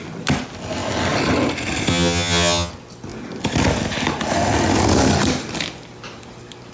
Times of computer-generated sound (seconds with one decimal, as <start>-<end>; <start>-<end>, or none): 1.9-2.7